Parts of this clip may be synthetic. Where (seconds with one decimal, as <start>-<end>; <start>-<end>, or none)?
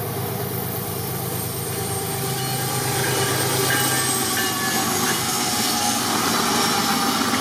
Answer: 5.1-6.0